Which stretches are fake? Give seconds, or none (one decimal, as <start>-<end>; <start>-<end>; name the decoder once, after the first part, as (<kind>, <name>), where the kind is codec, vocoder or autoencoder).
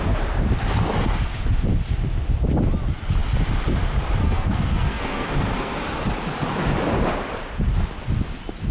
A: 4.2-5.8 (codec, SNAC)